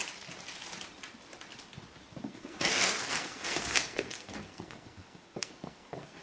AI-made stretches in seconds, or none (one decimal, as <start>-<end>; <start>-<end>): 2.2-6.2